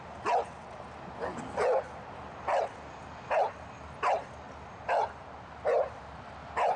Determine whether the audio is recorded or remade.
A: recorded